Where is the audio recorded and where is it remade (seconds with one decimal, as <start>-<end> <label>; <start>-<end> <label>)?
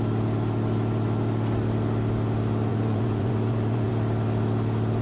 0.0-2.7 recorded; 2.7-3.9 remade; 3.9-5.0 recorded